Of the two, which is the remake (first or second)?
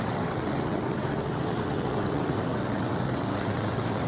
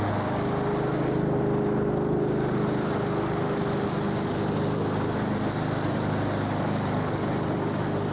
first